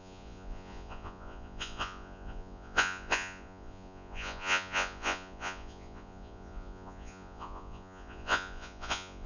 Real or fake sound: fake